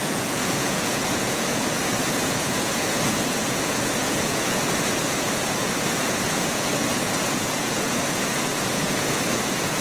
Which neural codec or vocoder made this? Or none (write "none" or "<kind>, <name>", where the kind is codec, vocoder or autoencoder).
vocoder, Vocos